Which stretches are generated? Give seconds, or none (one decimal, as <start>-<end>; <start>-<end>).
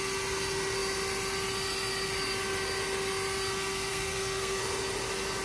3.9-4.6